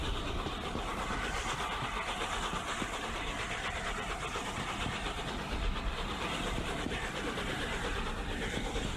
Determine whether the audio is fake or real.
real